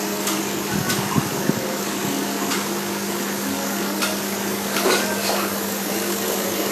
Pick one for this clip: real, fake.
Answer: fake